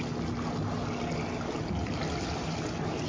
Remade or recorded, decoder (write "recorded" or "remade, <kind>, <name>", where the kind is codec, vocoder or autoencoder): recorded